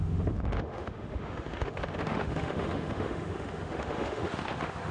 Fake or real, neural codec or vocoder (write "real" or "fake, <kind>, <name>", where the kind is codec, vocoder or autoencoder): fake, autoencoder, DAC-VAE